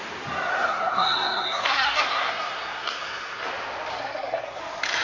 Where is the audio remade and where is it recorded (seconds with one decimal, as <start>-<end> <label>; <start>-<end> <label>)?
0.0-0.5 recorded; 0.5-3.5 remade; 3.5-3.9 recorded; 3.9-4.6 remade; 4.6-5.0 recorded

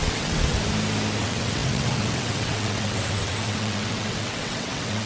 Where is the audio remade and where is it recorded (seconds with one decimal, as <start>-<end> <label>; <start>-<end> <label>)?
0.0-0.6 remade; 0.6-1.2 recorded; 1.2-5.1 remade